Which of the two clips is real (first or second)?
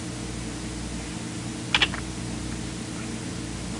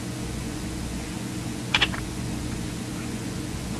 first